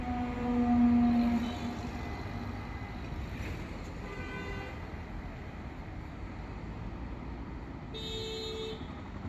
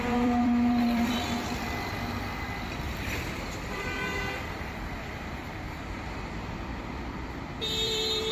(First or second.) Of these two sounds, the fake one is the second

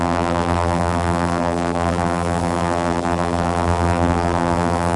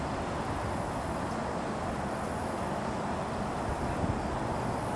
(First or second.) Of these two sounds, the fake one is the first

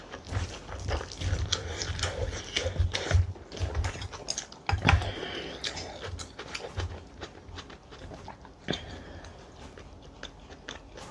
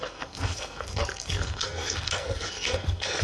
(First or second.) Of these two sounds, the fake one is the second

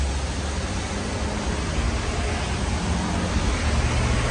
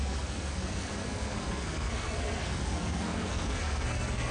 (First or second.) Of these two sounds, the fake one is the second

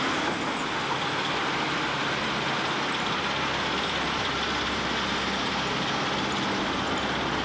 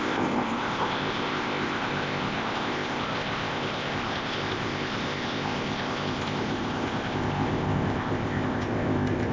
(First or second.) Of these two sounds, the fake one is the second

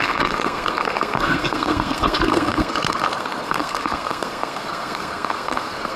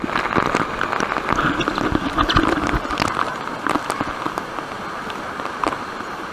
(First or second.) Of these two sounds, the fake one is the first